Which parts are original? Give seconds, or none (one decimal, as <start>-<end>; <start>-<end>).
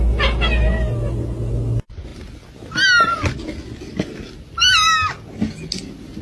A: 0.0-6.2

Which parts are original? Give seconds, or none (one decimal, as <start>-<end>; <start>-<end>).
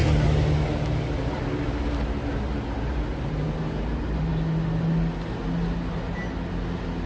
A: 0.0-2.4; 4.3-7.1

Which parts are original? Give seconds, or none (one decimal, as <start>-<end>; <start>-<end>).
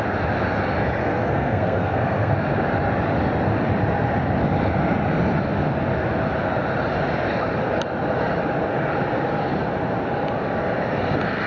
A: 0.0-1.0; 2.3-11.5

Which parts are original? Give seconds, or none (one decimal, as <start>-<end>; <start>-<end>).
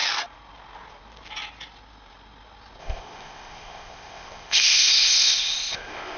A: 0.0-2.8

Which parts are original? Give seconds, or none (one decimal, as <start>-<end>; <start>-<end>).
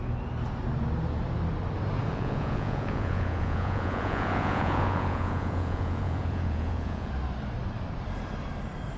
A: 0.0-2.1; 7.1-9.0